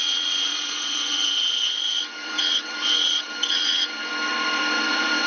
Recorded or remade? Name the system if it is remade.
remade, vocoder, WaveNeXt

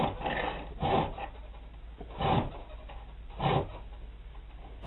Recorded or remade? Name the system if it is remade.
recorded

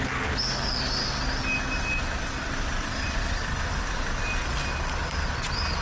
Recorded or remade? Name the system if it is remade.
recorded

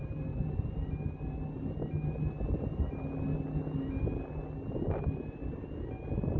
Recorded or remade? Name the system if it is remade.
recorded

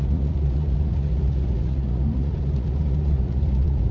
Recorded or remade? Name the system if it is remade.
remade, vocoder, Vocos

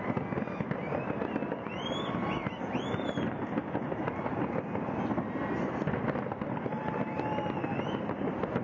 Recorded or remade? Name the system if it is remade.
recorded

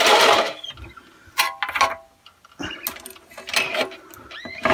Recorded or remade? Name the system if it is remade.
recorded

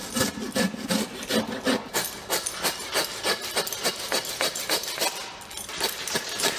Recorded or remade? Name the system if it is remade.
recorded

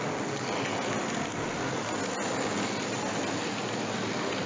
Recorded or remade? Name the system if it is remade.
recorded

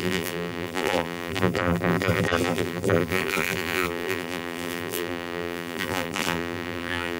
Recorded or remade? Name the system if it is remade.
remade, vocoder, BigVGAN v2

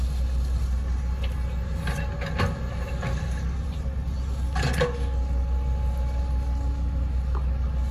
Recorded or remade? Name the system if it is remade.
recorded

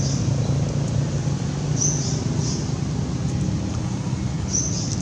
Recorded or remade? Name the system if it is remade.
recorded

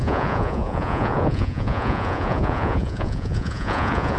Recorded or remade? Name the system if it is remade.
remade, vocoder, Vocos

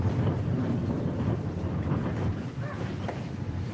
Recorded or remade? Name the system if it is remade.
recorded